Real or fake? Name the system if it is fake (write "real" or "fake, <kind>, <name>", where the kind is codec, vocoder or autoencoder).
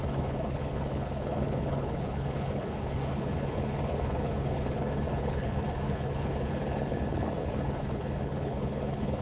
fake, codec, HILCodec